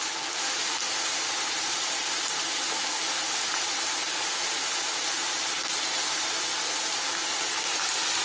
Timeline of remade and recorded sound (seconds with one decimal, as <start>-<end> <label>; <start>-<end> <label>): 0.0-8.2 recorded